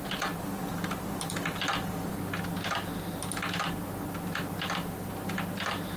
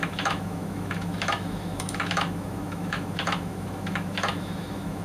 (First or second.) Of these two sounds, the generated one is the second